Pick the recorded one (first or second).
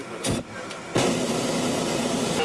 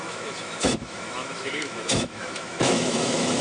first